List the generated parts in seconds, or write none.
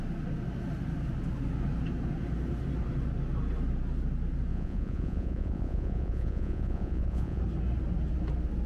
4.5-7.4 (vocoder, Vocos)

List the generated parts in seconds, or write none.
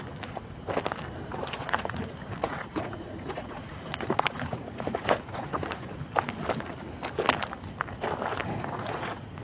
1.3-2.0 (vocoder, Vocos); 2.4-6.0; 8.4-9.4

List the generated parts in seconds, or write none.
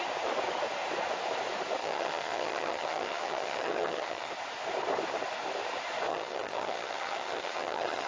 1.8-4.3 (vocoder, HiFi-GAN); 6.1-8.1